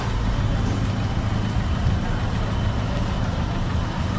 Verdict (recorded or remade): recorded